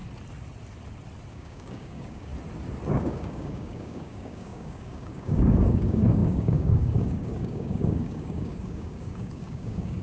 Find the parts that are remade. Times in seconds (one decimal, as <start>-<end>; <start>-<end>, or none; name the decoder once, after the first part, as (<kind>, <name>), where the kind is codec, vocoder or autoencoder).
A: 1.3-2.3 (codec, DAC); 2.9-10.0